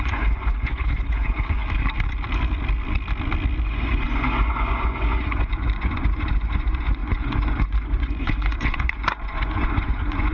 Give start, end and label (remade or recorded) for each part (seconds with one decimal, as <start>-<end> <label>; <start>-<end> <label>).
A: 0.0-1.6 remade; 1.6-3.6 recorded; 3.6-10.3 remade